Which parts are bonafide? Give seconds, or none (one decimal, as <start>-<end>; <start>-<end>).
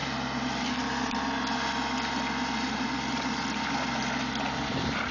0.0-5.1